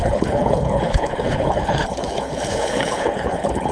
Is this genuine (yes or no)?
no